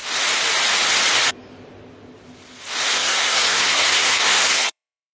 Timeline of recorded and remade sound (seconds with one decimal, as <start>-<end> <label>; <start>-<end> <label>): 0.0-2.9 recorded; 2.9-5.1 remade